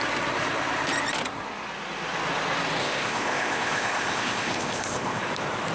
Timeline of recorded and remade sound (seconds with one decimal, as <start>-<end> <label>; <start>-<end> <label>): 0.0-2.8 recorded; 2.8-5.2 remade; 5.2-5.7 recorded